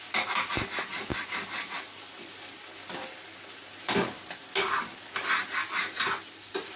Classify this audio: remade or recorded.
recorded